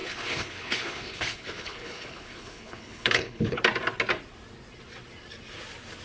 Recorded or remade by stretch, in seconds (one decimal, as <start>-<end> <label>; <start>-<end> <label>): 0.0-3.6 remade; 3.6-6.0 recorded